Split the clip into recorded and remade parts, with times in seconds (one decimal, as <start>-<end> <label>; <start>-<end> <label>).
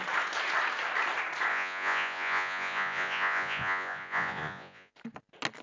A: 0.0-1.5 recorded; 1.5-4.9 remade; 4.9-5.6 recorded